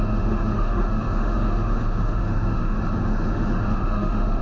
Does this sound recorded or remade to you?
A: remade